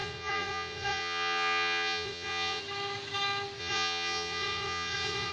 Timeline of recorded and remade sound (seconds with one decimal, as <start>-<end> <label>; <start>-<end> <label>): 0.0-2.6 remade; 2.6-3.6 recorded; 3.6-5.3 remade